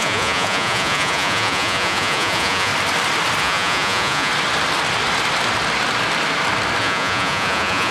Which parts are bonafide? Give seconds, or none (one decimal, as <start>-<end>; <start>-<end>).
2.7-3.4; 4.3-6.8